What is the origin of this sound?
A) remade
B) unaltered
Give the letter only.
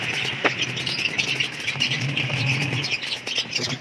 A